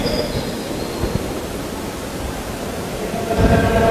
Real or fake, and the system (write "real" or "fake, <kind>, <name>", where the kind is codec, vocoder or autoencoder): real